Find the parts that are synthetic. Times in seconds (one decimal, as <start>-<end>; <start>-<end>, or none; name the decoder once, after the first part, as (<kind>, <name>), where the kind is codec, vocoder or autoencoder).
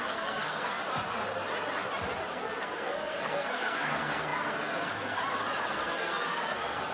0.0-0.8 (codec, SNAC); 2.3-5.2; 5.7-6.9